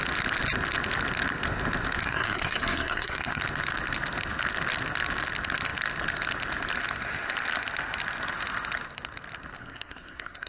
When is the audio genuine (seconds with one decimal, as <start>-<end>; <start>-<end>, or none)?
0.0-2.0; 3.4-9.6